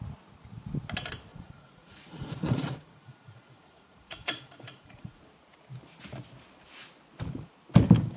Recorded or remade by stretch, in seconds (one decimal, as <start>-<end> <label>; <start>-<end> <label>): 0.0-1.3 recorded; 1.3-5.2 remade; 5.2-8.2 recorded